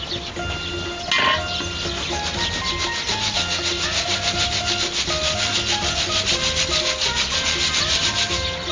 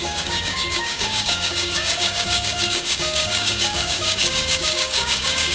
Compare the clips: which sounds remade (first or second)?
second